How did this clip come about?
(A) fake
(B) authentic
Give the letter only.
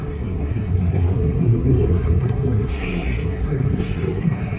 A